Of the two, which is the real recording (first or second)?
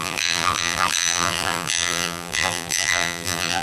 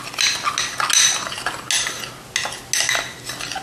second